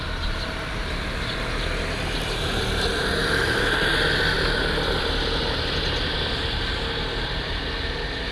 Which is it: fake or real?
real